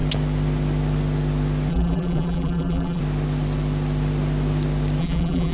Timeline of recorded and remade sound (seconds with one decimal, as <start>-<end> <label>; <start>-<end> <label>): 0.0-1.7 recorded; 1.7-3.0 remade; 3.0-5.0 recorded; 5.0-5.5 remade